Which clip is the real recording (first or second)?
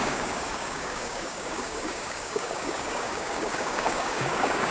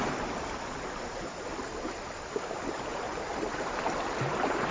second